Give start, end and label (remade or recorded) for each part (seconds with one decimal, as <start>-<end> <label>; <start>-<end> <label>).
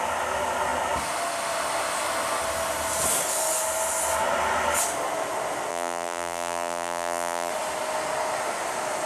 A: 0.0-5.7 recorded; 5.7-7.5 remade; 7.5-9.1 recorded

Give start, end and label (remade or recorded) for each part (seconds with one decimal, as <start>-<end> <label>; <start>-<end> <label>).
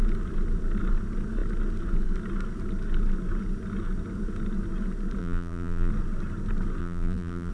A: 0.0-5.2 recorded; 5.2-5.9 remade; 5.9-6.8 recorded; 6.8-7.5 remade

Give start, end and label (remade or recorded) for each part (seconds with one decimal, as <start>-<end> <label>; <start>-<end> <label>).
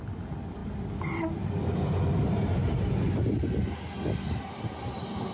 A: 0.0-0.6 recorded; 0.6-3.8 remade; 3.8-5.3 recorded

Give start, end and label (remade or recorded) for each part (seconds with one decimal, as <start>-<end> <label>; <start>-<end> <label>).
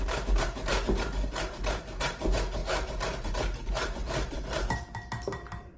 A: 0.0-5.8 remade